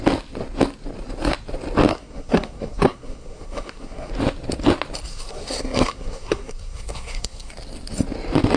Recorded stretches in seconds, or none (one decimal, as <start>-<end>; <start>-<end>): 0.0-1.9; 4.1-5.1; 7.5-8.6